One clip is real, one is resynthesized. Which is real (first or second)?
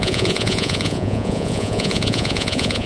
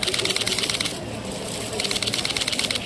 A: second